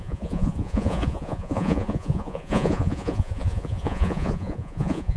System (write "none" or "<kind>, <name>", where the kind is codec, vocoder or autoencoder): vocoder, Vocos